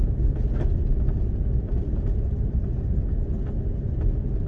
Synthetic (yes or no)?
no